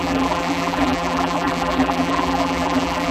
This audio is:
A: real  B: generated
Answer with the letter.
B